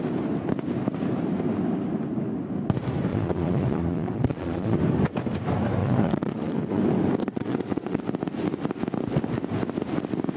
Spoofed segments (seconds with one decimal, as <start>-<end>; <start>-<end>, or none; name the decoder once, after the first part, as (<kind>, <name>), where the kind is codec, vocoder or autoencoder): 3.1-4.8 (vocoder, Vocos); 5.8-6.8; 7.2-8.0